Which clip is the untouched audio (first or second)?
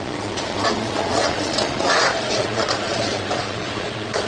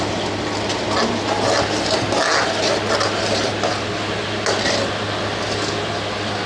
second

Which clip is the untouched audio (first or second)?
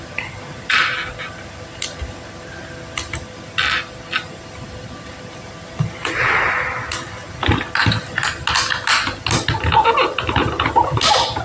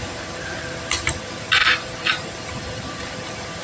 first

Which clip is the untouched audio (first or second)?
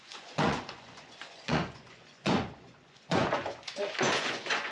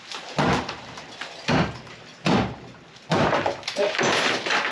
second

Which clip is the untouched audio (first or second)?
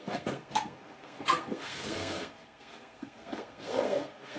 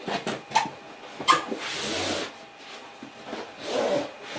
second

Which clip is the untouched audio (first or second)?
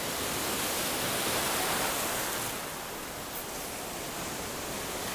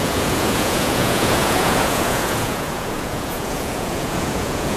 first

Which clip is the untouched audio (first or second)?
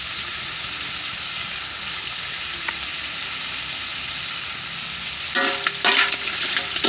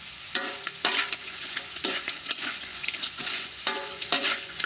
first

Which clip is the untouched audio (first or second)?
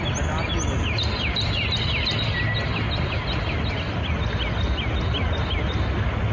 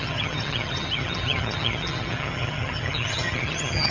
first